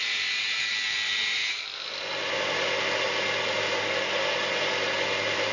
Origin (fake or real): real